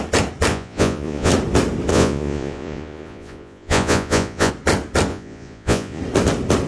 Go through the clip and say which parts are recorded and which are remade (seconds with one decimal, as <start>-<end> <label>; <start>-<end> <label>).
0.0-0.5 recorded; 0.5-1.3 remade; 1.3-1.9 recorded; 1.9-4.5 remade; 4.5-5.1 recorded; 5.1-6.0 remade; 6.0-6.7 recorded